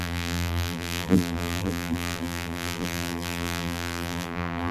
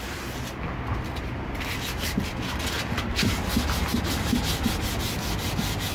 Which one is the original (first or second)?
second